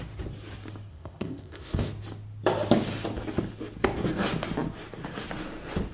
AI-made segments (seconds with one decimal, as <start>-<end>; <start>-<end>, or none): 0.9-1.9

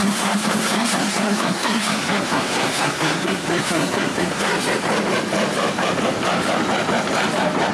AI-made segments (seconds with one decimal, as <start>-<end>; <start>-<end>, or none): 0.0-4.5

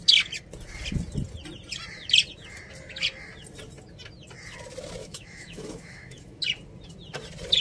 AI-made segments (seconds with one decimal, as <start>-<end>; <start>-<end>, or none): 5.0-6.4

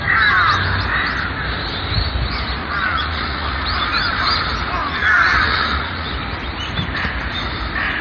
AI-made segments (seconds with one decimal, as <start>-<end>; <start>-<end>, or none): 2.6-3.6; 4.8-6.1

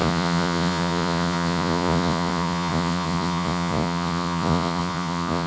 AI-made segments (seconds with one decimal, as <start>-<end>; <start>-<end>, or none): 0.0-5.5

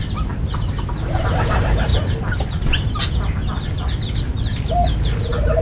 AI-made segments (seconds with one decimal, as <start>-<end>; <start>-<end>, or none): 0.0-5.6

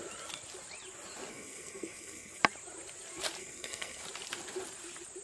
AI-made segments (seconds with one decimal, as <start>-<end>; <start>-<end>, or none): 1.3-2.4; 3.4-4.0